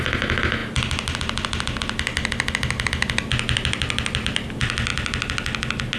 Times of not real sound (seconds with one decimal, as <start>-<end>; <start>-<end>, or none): none